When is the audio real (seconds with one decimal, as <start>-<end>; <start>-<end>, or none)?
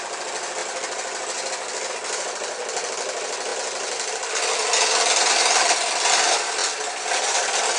0.0-7.8